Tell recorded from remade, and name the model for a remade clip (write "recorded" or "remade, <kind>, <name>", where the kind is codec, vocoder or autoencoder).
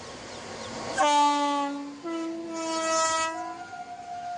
recorded